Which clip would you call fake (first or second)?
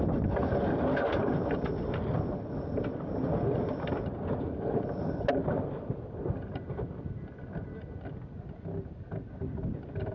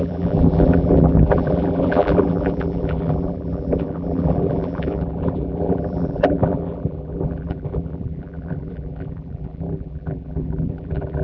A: second